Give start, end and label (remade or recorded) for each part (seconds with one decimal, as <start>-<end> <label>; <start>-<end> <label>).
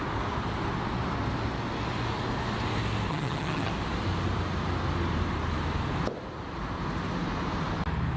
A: 0.0-3.1 recorded; 3.1-3.7 remade; 3.7-8.2 recorded